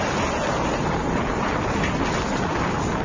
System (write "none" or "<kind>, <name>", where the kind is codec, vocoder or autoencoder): none